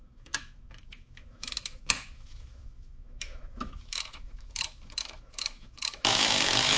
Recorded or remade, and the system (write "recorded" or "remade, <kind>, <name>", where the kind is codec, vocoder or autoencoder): remade, autoencoder, DAC-VAE